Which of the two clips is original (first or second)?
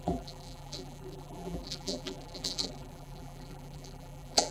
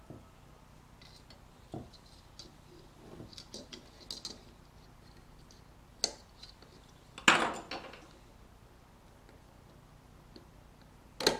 second